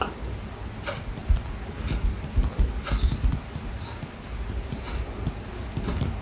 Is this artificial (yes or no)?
no